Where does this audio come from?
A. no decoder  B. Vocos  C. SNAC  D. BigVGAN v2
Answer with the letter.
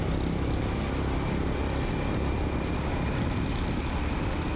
A